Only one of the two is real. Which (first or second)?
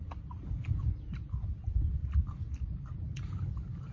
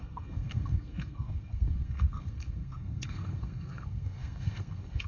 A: first